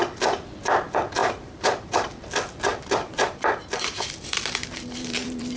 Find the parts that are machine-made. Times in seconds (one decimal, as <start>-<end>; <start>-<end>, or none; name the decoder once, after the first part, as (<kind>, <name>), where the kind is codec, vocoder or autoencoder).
1.2-2.1 (vocoder, BigVGAN v2); 2.7-5.6